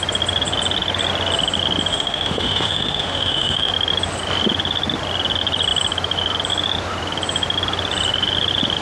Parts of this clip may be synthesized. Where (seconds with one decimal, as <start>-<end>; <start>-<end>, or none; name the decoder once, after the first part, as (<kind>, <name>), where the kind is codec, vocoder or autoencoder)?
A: 1.9-3.7 (autoencoder, DAC-VAE)